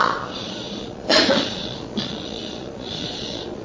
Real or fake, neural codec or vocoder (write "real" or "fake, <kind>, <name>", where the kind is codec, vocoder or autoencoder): fake, vocoder, Vocos